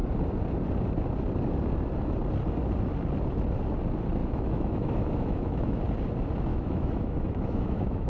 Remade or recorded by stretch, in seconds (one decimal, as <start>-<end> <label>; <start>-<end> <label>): 0.0-4.2 recorded; 4.2-5.8 remade; 5.8-6.5 recorded; 6.5-8.1 remade